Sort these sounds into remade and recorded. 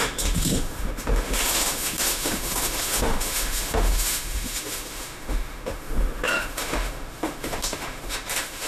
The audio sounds remade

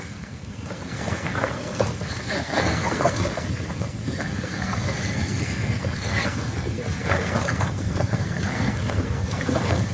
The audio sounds remade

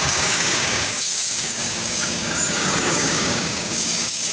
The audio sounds remade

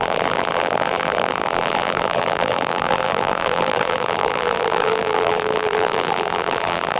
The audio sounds remade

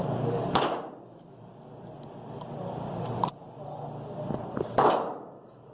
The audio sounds recorded